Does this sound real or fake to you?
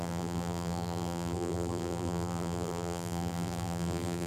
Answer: fake